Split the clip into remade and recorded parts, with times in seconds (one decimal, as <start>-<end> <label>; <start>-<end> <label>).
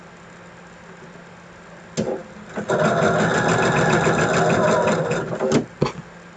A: 0.0-6.4 recorded